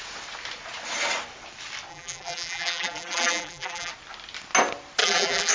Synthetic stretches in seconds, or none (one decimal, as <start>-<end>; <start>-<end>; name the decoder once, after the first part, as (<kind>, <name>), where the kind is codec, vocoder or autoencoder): 1.9-3.9 (vocoder, BigVGAN v2); 5.0-5.5